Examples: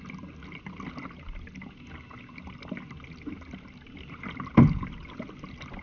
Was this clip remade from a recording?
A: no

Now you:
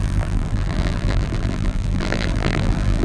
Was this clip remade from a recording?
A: yes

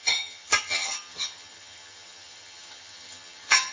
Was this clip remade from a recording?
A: yes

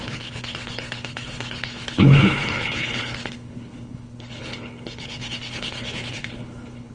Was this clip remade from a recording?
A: yes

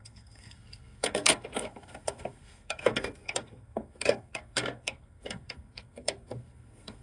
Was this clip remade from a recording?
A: yes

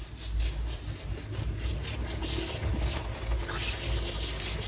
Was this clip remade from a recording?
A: no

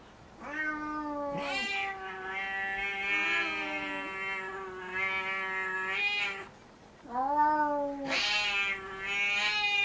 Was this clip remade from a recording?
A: no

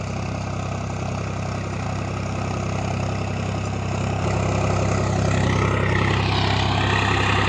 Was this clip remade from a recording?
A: no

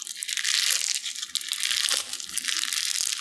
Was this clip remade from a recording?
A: no